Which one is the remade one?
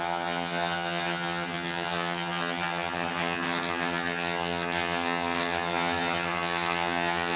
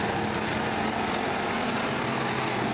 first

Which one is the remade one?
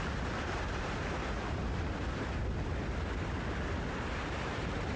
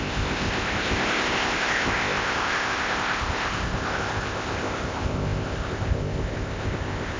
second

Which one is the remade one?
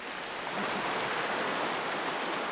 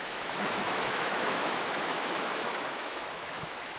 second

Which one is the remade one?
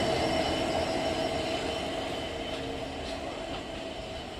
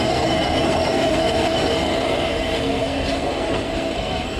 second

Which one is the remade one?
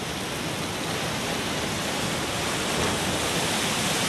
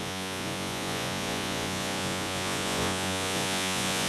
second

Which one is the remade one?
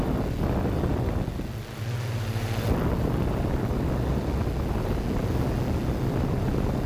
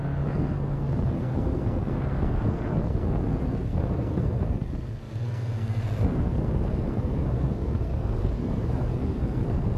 second